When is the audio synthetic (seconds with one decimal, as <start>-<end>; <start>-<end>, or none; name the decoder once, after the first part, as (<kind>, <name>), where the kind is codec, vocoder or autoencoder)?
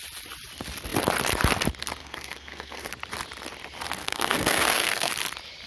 2.0-2.9 (codec, SNAC); 4.0-5.1